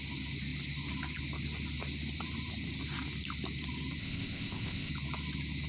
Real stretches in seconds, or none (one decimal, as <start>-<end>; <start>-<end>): 0.0-4.0; 4.9-5.7